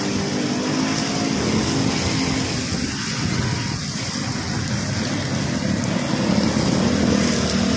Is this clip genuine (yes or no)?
yes